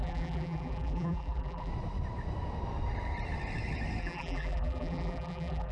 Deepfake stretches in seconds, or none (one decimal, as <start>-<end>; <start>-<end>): 0.0-1.7; 4.0-5.7